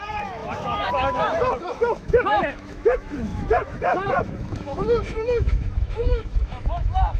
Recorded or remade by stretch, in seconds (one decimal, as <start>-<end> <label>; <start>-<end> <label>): 0.0-7.2 remade